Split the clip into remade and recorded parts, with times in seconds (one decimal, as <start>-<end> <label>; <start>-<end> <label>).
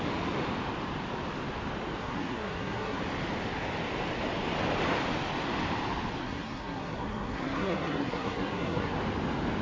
0.0-2.0 recorded; 2.0-3.0 remade; 3.0-6.2 recorded; 6.2-9.0 remade; 9.0-9.6 recorded